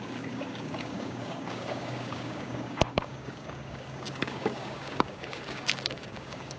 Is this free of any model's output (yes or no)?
no